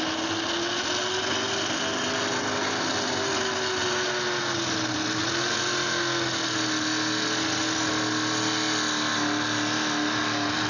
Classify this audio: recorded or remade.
recorded